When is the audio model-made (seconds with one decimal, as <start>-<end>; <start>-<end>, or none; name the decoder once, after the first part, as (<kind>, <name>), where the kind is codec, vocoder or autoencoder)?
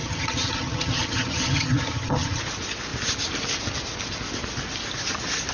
0.0-2.4 (vocoder, HiFi-GAN)